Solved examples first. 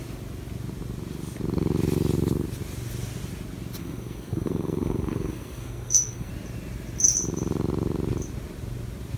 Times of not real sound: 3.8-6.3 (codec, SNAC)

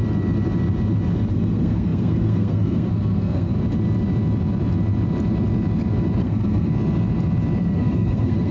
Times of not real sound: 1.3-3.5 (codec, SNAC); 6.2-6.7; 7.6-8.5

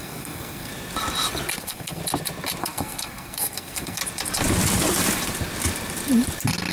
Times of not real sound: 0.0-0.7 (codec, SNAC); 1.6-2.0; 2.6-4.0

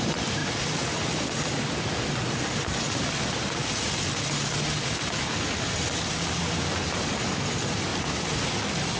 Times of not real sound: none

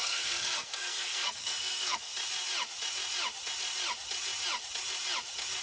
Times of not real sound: 0.0-2.1 (codec, SNAC)